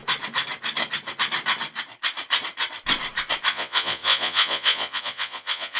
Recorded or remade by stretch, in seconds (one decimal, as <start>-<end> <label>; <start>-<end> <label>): 0.0-3.5 recorded; 3.5-5.8 remade